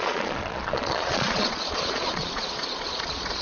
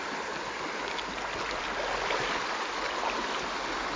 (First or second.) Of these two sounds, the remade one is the first